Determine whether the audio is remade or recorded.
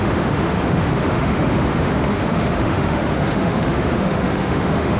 remade